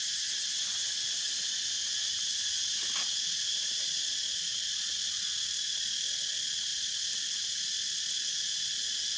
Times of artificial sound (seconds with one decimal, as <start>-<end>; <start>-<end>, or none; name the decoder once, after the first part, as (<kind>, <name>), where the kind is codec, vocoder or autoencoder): 2.7-6.1 (vocoder, BigVGAN v2); 6.7-9.2